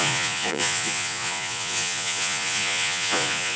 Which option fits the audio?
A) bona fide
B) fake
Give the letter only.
B